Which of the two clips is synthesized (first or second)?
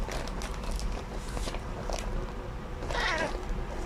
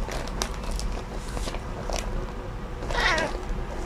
first